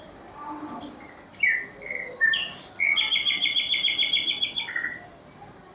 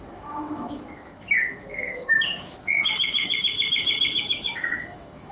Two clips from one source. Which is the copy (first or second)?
second